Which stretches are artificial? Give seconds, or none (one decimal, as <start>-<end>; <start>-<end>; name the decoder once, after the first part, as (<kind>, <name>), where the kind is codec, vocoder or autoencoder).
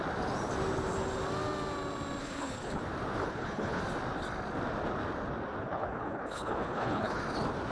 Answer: 2.2-2.8 (codec, HILCodec); 3.2-3.8; 5.6-7.2